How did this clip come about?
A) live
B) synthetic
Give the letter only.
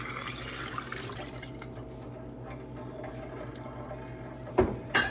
A